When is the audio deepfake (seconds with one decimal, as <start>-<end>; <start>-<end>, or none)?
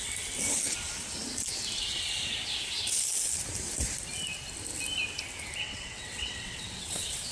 5.6-7.3